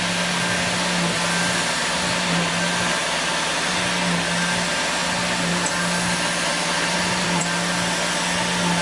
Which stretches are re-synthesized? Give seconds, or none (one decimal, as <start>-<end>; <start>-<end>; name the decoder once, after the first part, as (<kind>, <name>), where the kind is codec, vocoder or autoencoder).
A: 1.8-2.5 (vocoder, BigVGAN v2); 6.5-7.4